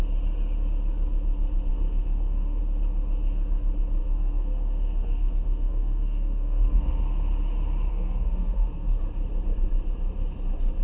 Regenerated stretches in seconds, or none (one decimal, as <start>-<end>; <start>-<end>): 1.7-2.6; 4.0-7.0; 7.9-9.0